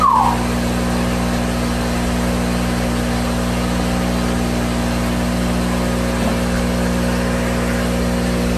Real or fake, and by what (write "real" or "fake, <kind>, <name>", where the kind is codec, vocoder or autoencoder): real